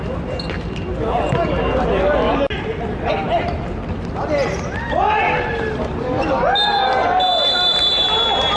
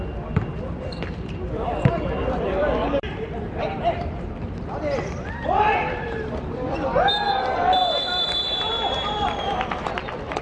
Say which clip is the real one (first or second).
first